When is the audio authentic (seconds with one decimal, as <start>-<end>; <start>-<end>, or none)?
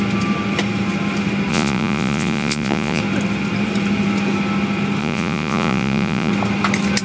0.0-1.5; 3.0-5.0; 6.3-7.0